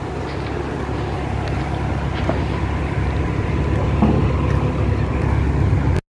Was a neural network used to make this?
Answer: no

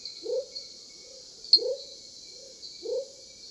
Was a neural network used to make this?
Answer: no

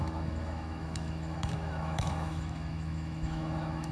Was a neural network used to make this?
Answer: yes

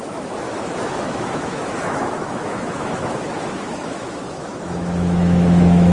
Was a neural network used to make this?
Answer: yes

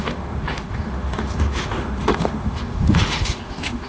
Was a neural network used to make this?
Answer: yes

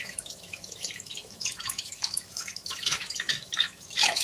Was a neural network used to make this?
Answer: yes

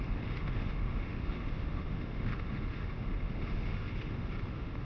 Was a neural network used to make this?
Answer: yes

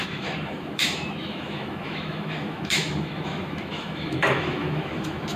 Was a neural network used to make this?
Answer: yes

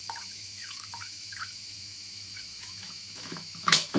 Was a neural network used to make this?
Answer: yes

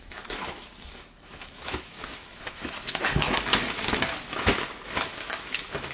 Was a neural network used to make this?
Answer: yes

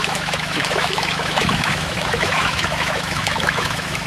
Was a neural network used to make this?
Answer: yes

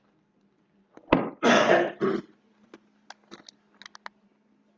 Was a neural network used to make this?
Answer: no